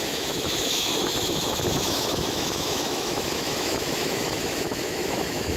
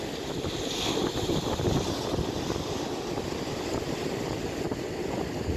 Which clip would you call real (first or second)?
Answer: second